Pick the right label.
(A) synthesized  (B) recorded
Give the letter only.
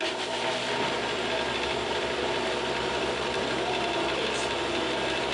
B